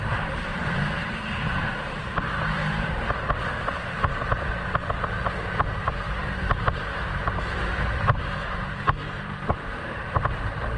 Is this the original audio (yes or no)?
no